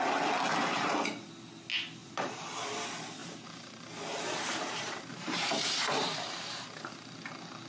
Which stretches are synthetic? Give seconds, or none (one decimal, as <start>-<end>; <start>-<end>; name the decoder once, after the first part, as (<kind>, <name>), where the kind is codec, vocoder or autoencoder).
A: 2.0-2.5 (vocoder, BigVGAN v2); 3.2-6.9